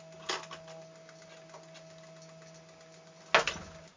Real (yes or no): yes